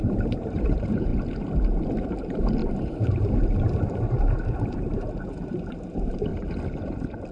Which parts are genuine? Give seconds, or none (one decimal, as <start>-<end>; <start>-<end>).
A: 1.1-2.2; 2.6-3.1; 3.5-4.7; 6.3-7.3